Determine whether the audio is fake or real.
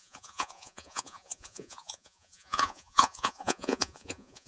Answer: fake